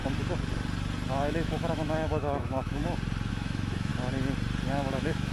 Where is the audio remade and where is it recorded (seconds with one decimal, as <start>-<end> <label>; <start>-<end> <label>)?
0.0-1.1 recorded; 1.1-2.8 remade; 2.8-3.3 recorded; 3.3-3.9 remade; 3.9-4.7 recorded; 4.7-5.3 remade